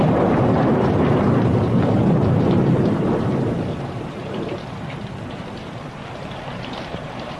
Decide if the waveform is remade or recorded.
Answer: remade